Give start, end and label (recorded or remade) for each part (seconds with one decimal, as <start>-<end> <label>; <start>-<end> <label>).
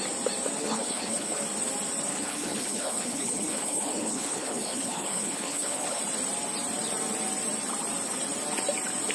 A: 0.0-0.6 recorded; 0.6-1.4 remade; 1.4-2.1 recorded; 2.1-6.0 remade; 6.0-9.1 recorded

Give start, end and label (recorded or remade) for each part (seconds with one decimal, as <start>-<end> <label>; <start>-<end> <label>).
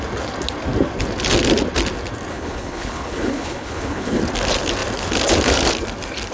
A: 0.0-2.3 recorded; 2.3-4.2 remade; 4.2-6.3 recorded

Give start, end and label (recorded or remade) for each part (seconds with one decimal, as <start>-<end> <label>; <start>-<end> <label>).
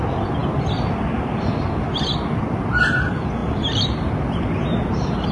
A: 0.0-5.3 recorded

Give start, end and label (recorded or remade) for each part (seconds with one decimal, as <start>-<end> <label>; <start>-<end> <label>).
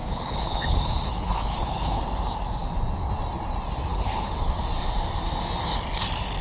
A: 0.0-2.0 remade; 2.0-3.9 recorded; 3.9-4.6 remade; 4.6-6.4 recorded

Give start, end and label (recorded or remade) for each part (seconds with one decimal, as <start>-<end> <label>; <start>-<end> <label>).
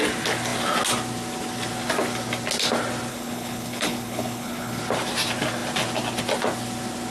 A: 0.0-3.1 recorded; 3.1-4.8 remade; 4.8-7.1 recorded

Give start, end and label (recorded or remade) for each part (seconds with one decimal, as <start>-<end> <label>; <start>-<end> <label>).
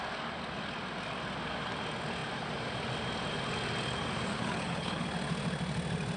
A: 0.0-4.3 recorded; 4.3-5.0 remade; 5.0-6.2 recorded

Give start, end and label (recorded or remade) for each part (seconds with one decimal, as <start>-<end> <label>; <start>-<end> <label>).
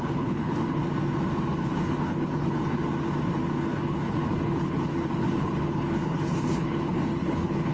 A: 0.0-0.8 remade; 0.8-1.5 recorded; 1.5-2.8 remade; 2.8-3.6 recorded; 3.6-7.7 remade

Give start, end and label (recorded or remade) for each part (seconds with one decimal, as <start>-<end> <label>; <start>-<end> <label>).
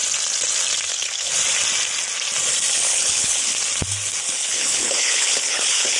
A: 0.0-0.9 recorded; 0.9-1.3 remade; 1.3-2.7 recorded; 2.7-3.5 remade; 3.5-4.2 recorded; 4.2-6.0 remade